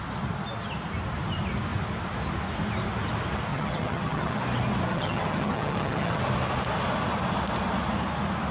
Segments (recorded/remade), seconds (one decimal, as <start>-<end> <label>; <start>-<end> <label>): 0.0-3.5 recorded; 3.5-4.4 remade; 4.4-4.9 recorded; 4.9-6.2 remade; 6.2-8.5 recorded